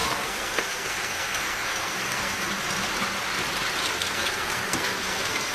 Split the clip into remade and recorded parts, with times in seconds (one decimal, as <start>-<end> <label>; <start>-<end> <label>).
0.0-2.5 remade; 2.5-4.0 recorded; 4.0-5.5 remade